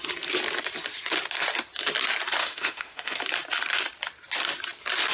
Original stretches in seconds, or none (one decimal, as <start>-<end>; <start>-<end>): 0.0-2.4; 3.2-5.1